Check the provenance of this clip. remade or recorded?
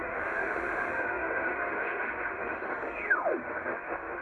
remade